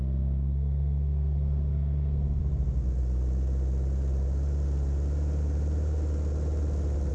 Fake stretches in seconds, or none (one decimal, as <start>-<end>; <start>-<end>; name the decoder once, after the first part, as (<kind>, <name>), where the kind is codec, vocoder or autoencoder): 0.0-2.4 (codec, SNAC)